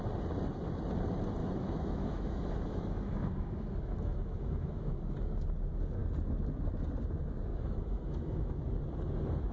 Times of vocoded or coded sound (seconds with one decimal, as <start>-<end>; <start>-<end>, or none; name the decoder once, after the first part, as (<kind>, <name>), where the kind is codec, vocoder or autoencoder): 1.4-4.9 (autoencoder, DAC-VAE); 7.5-8.6